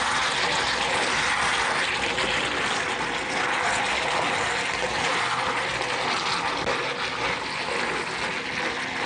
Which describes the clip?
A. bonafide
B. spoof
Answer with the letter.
A